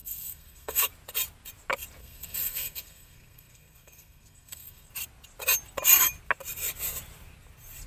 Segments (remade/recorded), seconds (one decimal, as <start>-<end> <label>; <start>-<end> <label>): 0.0-0.9 remade; 0.9-2.0 recorded; 2.0-4.9 remade; 4.9-7.9 recorded